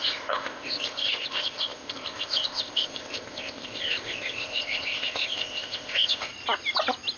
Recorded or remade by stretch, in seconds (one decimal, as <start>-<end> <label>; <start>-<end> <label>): 0.0-6.3 remade; 6.3-7.2 recorded